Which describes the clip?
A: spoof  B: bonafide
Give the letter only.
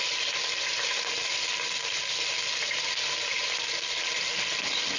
B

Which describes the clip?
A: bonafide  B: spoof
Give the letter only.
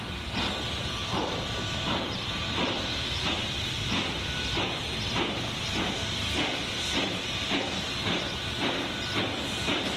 A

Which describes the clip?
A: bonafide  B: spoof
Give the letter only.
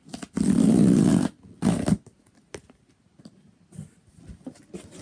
A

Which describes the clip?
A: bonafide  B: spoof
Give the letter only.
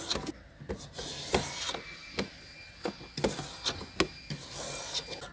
A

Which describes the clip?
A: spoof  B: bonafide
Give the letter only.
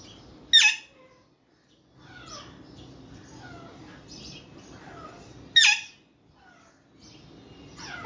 B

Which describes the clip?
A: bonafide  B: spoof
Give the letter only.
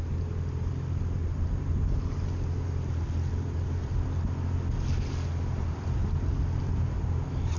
A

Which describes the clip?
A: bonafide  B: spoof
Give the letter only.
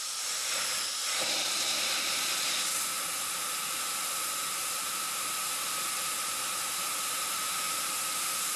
A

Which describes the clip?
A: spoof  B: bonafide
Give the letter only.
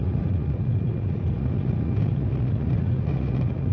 A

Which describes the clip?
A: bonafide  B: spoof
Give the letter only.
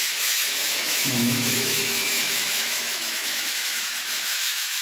B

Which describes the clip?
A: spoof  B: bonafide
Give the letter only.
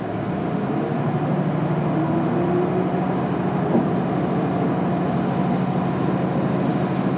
B